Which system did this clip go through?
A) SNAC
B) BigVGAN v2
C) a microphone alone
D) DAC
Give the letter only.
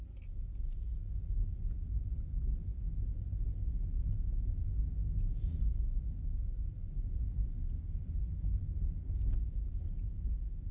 C